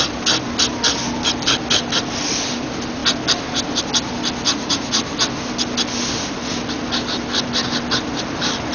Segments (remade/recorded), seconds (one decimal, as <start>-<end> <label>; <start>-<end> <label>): 0.0-4.5 recorded; 4.5-5.0 remade; 5.0-8.7 recorded

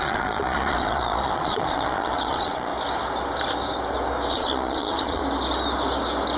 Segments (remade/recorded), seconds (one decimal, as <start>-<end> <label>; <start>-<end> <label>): 0.0-2.7 remade; 2.7-4.3 recorded; 4.3-5.2 remade; 5.2-6.4 recorded